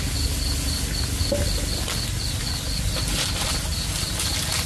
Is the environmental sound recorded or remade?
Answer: recorded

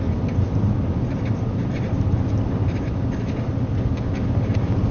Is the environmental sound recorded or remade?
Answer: recorded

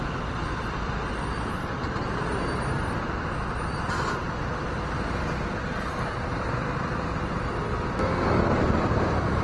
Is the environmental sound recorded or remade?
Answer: recorded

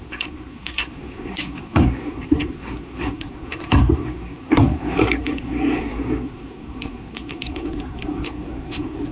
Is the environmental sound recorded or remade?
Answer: remade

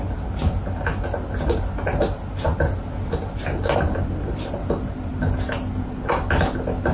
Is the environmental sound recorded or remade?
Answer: recorded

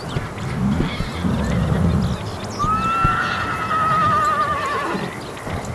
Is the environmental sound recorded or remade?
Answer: recorded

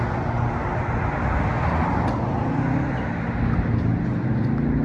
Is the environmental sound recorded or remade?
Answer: recorded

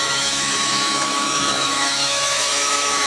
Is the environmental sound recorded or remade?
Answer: remade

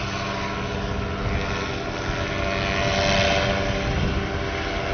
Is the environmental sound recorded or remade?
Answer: recorded